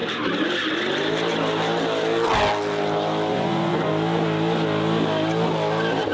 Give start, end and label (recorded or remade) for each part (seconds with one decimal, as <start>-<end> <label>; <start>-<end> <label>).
0.0-3.3 recorded; 3.3-3.9 remade; 3.9-6.1 recorded